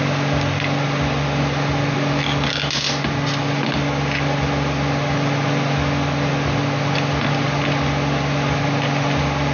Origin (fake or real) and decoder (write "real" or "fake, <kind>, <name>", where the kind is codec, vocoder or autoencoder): real